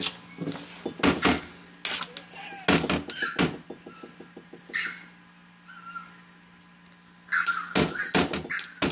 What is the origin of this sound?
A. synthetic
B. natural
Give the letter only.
B